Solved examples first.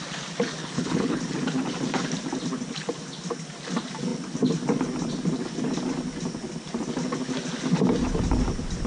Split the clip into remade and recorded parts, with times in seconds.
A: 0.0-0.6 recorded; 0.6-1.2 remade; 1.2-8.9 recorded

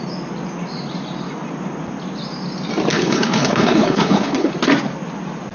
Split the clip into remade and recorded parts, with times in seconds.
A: 0.0-2.9 recorded; 2.9-4.5 remade; 4.5-5.5 recorded